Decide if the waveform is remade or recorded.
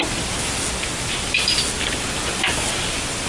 recorded